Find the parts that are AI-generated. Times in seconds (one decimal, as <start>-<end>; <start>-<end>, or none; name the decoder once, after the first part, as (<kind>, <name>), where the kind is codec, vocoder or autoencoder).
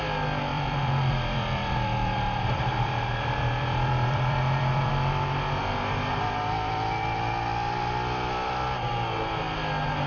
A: 0.5-4.9 (vocoder, BigVGAN v2)